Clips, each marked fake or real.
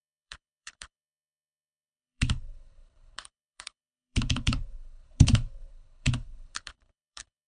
fake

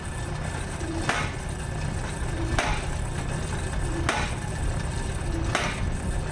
real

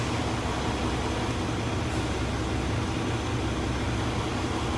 real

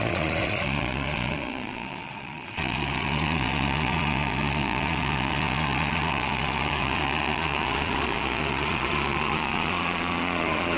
fake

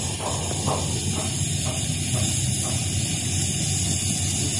real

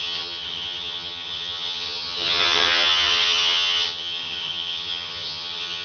fake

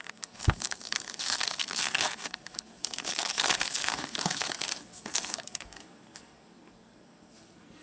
fake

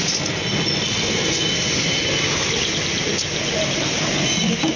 real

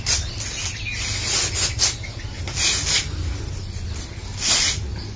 real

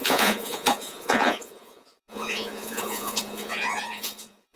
fake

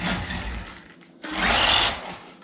real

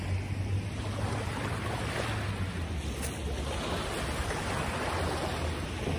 real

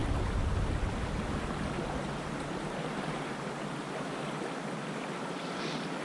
real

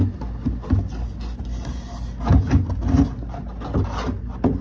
real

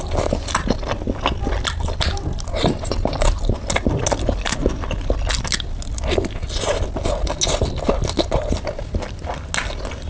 real